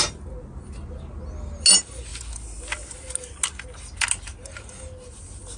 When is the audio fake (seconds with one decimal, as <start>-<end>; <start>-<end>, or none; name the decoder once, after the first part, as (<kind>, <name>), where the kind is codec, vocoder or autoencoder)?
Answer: none